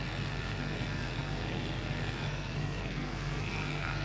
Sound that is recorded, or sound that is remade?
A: remade